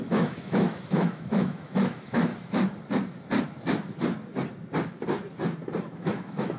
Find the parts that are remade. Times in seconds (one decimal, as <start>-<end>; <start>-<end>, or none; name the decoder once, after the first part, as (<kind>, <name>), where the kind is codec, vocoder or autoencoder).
0.0-2.3 (autoencoder, DAC-VAE); 5.9-6.6